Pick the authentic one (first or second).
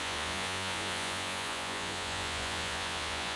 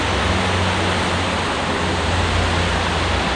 second